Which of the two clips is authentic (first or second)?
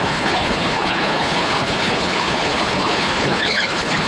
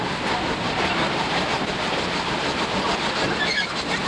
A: second